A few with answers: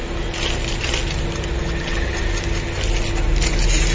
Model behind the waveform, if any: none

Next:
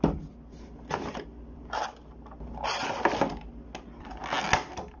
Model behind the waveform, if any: none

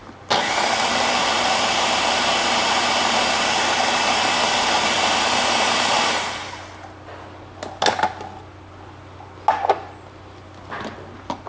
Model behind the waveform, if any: none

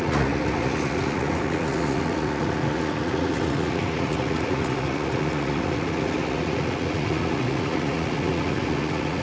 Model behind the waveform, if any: vocoder, Vocos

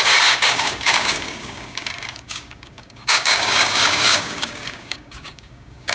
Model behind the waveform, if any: codec, DAC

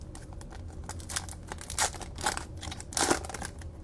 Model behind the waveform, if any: none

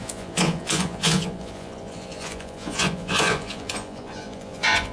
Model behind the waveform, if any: vocoder, Vocos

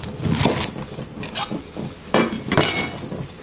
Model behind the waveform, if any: none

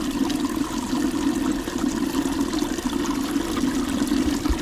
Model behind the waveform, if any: none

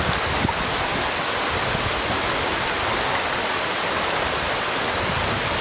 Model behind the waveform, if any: none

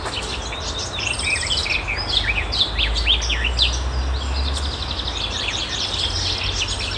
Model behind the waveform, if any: none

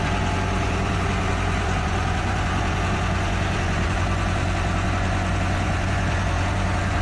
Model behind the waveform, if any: vocoder, Vocos